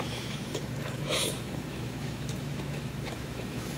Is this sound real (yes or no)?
no